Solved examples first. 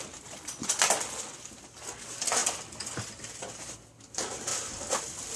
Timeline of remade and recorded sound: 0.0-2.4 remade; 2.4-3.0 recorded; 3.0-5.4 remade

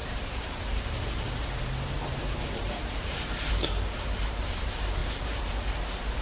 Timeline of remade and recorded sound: 0.0-3.5 remade; 3.5-5.0 recorded; 5.0-5.5 remade; 5.5-6.2 recorded

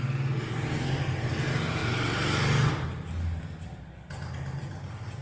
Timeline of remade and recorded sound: 0.0-5.2 recorded

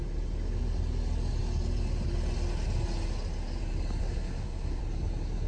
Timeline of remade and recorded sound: 0.0-4.0 recorded; 4.0-4.8 remade; 4.8-5.5 recorded

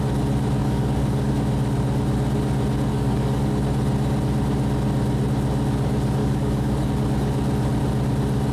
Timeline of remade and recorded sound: 0.0-0.6 recorded; 0.6-1.3 remade; 1.3-2.9 recorded; 2.9-3.5 remade; 3.5-6.2 recorded; 6.2-6.9 remade; 6.9-8.5 recorded

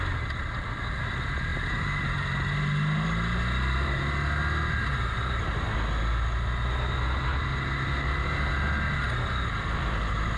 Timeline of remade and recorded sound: 0.0-1.5 recorded; 1.5-2.6 remade; 2.6-10.4 recorded

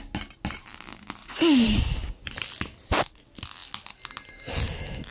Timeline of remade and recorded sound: 0.0-1.2 recorded; 1.2-1.8 remade; 1.8-5.1 recorded

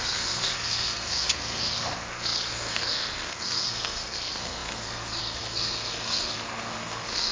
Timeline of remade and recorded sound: 0.0-7.3 remade